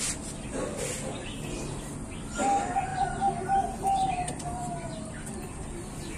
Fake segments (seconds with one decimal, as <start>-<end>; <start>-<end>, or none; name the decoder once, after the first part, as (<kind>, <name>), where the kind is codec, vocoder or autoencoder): 2.9-5.3 (vocoder, BigVGAN v2)